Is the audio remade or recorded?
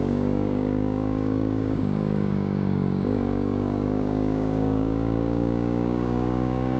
remade